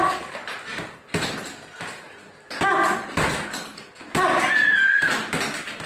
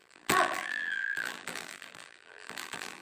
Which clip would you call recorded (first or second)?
first